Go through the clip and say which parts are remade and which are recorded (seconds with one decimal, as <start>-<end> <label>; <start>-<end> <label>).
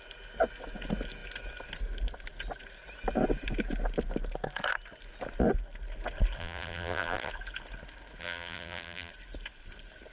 0.0-6.4 recorded; 6.4-7.3 remade; 7.3-8.2 recorded; 8.2-9.1 remade; 9.1-10.1 recorded